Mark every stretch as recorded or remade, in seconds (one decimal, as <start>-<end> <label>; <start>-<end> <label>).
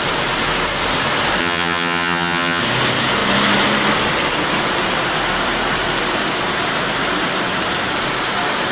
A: 0.0-1.4 recorded; 1.4-2.6 remade; 2.6-8.7 recorded